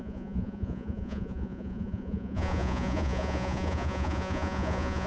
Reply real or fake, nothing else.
fake